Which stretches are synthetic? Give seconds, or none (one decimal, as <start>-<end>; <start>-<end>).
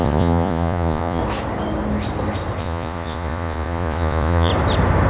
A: 0.0-1.2; 2.6-4.5